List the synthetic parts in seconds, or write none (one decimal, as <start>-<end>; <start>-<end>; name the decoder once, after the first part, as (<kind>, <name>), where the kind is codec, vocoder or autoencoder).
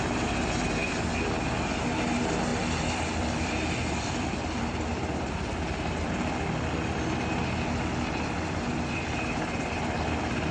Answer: 0.8-1.4 (vocoder, BigVGAN v2); 2.5-6.3